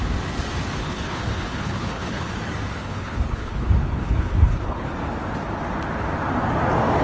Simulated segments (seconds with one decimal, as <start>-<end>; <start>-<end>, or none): 0.8-2.3; 2.8-4.9